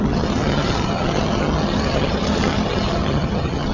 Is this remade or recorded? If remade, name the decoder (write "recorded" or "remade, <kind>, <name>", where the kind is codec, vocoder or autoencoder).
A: remade, vocoder, HiFi-GAN